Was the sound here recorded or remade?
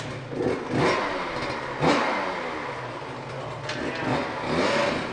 recorded